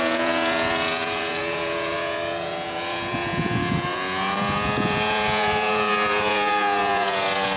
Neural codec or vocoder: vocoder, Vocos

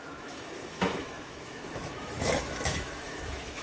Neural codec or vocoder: autoencoder, DAC-VAE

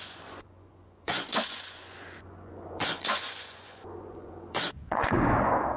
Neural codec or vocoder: vocoder, Vocos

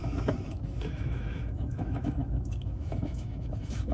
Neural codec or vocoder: autoencoder, DAC-VAE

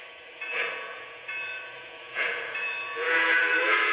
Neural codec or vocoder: vocoder, Vocos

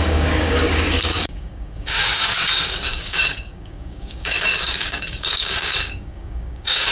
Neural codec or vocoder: codec, DAC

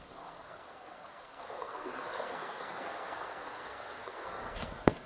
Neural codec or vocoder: codec, SNAC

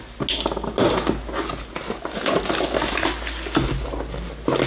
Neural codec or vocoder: none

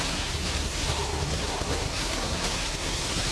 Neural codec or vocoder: codec, SNAC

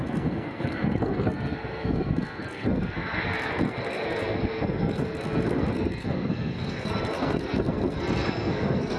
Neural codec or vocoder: codec, SNAC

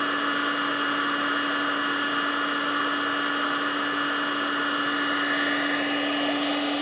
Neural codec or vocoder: none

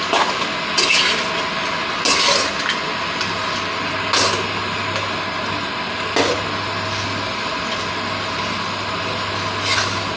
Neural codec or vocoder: none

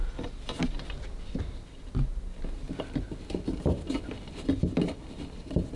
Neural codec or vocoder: none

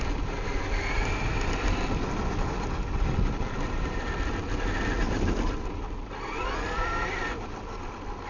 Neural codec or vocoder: none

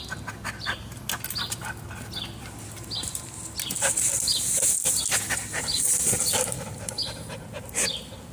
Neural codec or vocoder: none